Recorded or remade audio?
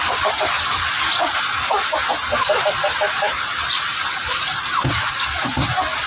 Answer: recorded